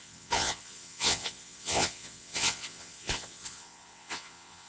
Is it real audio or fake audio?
fake